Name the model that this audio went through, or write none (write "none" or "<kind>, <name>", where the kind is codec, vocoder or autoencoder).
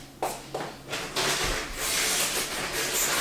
none